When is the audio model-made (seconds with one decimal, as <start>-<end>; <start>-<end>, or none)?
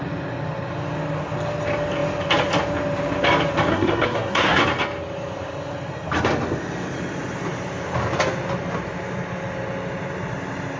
3.7-4.6